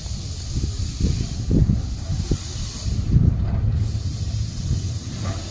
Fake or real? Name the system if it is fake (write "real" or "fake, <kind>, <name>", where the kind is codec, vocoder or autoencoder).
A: real